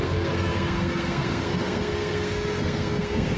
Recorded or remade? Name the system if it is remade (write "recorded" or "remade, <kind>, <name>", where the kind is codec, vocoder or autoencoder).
remade, codec, SNAC